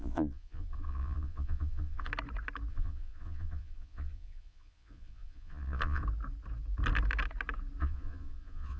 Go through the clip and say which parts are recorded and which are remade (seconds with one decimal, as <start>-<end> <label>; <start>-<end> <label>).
0.0-2.1 remade; 2.1-2.7 recorded; 2.7-6.0 remade; 6.0-7.8 recorded; 7.8-8.8 remade